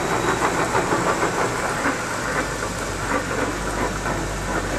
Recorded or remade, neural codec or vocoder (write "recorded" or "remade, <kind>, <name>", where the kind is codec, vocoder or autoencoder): recorded